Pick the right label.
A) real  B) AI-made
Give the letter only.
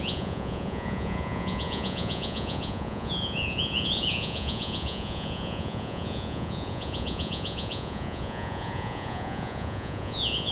B